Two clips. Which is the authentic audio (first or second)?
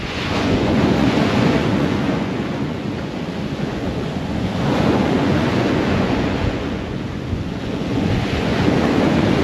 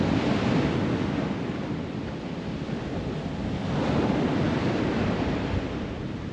second